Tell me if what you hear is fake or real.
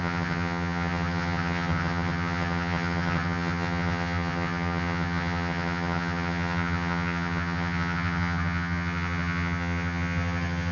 fake